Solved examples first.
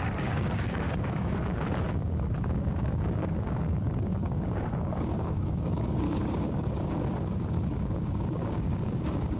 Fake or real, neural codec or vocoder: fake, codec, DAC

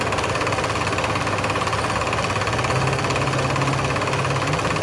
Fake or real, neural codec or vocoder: real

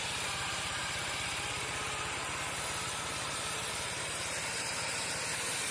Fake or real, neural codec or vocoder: real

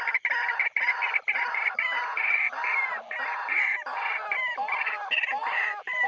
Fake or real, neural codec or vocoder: real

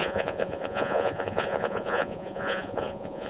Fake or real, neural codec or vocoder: fake, vocoder, Vocos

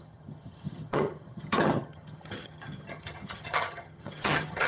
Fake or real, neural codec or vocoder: fake, vocoder, HiFi-GAN